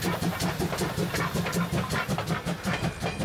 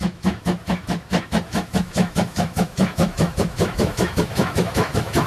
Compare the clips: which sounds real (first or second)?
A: first